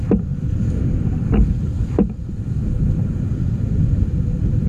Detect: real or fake real